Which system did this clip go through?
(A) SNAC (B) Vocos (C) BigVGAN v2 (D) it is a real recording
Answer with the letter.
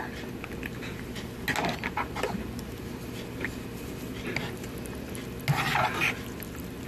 D